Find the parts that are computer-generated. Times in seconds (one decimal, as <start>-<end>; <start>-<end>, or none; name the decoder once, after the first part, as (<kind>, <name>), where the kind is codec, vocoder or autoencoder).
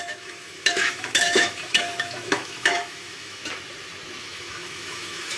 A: 0.0-3.4 (autoencoder, DAC-VAE); 4.2-5.4